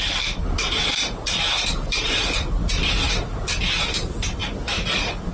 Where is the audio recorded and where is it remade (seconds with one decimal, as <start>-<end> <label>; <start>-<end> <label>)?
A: 0.0-5.3 recorded